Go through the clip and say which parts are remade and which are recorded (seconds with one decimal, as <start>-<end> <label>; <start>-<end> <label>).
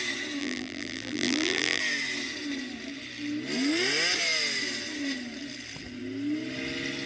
0.0-0.4 recorded; 0.4-1.8 remade; 1.8-7.1 recorded